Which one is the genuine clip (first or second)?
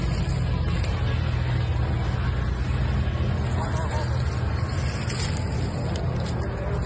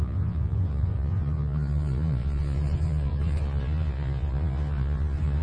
first